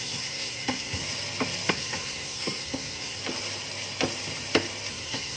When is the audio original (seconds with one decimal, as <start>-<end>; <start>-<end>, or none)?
1.0-1.7; 3.2-4.9